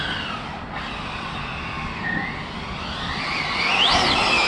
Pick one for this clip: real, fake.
real